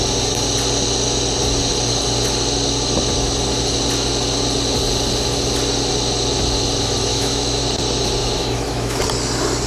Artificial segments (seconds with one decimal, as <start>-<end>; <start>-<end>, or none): 7.1-7.6; 8.2-9.0